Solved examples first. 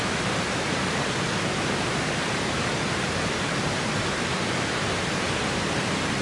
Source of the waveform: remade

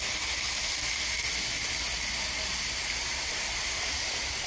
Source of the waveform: recorded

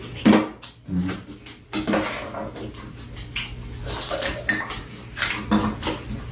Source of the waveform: recorded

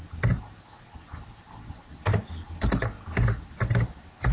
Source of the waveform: recorded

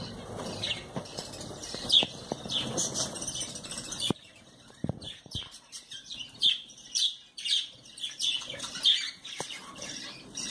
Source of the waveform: remade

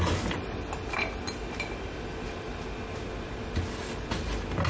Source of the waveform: recorded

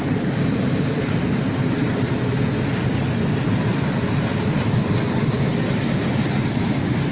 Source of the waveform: recorded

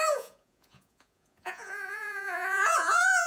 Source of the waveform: remade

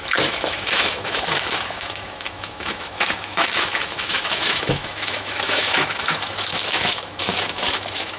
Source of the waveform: remade